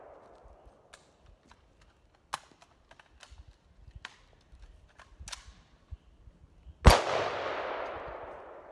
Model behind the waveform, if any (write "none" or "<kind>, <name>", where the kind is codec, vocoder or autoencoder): none